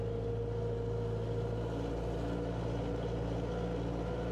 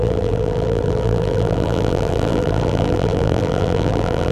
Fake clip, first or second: second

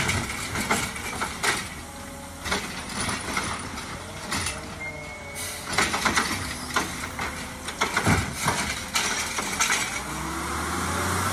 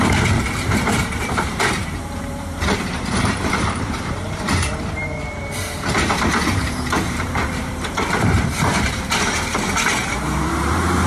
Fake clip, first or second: second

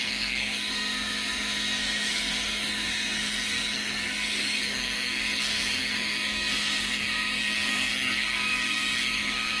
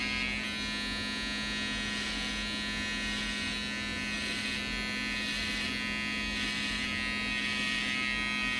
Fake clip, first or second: first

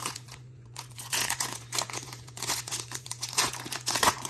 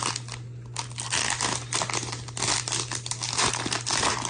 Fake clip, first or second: first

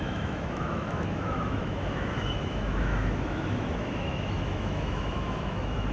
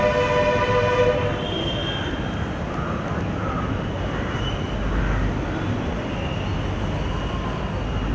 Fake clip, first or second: first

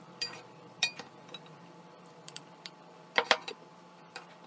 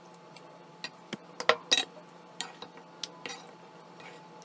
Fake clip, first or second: first